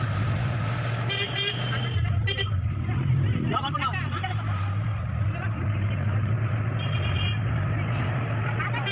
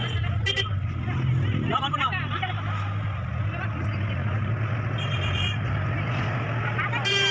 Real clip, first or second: second